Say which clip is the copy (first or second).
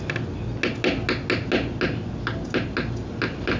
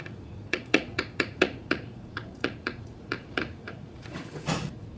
second